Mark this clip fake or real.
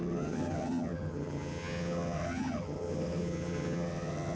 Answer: fake